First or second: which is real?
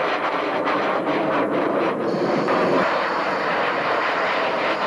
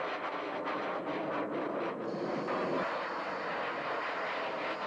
second